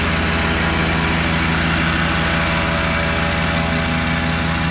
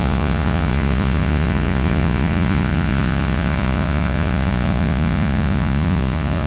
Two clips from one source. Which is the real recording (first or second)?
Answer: first